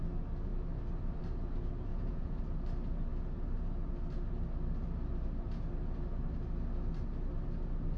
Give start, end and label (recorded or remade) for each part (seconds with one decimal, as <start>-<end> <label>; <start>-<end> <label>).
0.0-1.9 recorded; 1.9-2.4 remade; 2.4-8.0 recorded